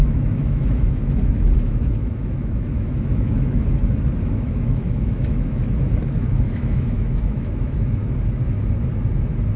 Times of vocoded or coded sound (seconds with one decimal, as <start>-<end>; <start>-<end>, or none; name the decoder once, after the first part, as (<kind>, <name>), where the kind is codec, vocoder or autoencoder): 0.0-3.6 (autoencoder, DAC-VAE); 4.2-8.0